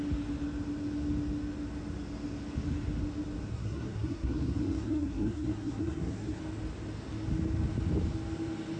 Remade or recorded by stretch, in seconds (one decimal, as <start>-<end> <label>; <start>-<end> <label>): 0.0-3.5 recorded; 3.5-6.4 remade; 6.4-8.8 recorded